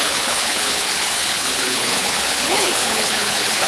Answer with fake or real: fake